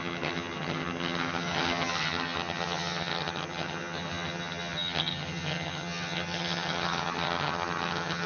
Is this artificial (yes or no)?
yes